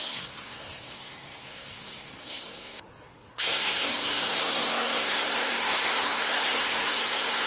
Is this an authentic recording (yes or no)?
no